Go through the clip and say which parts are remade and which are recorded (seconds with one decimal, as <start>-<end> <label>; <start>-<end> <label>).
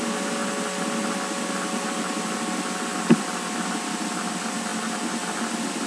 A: 0.0-5.9 recorded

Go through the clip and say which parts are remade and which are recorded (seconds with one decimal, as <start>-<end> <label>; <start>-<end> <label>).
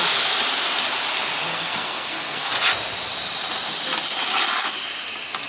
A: 0.0-1.5 recorded; 1.5-2.5 remade; 2.5-5.5 recorded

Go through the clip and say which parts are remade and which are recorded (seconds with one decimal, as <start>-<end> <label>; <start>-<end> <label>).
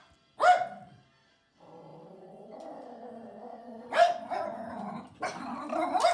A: 0.0-1.9 recorded; 1.9-4.3 remade; 4.3-6.1 recorded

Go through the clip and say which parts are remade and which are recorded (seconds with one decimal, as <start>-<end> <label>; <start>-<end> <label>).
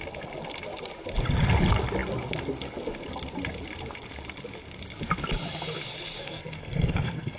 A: 0.0-6.2 recorded; 6.2-7.4 remade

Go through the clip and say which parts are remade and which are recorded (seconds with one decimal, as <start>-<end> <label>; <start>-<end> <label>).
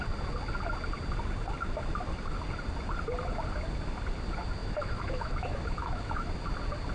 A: 0.0-4.6 recorded; 4.6-6.3 remade; 6.3-6.9 recorded